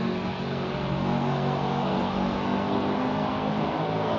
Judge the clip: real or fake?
fake